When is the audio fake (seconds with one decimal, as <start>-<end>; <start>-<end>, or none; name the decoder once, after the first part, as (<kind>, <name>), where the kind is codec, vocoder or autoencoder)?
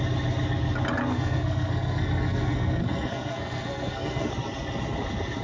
1.1-4.3 (codec, SNAC)